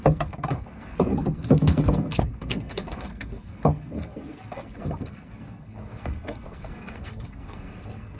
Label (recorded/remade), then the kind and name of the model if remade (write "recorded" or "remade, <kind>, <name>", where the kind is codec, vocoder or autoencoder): remade, codec, SNAC